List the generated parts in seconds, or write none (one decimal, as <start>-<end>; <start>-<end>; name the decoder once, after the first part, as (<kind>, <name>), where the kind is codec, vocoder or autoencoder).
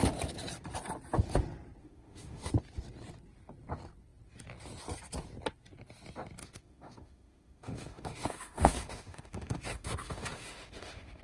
1.8-2.5 (autoencoder, DAC-VAE); 6.4-11.2